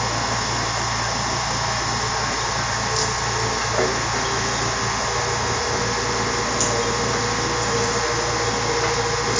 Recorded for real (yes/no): yes